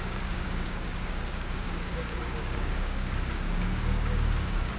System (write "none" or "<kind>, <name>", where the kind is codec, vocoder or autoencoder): codec, DAC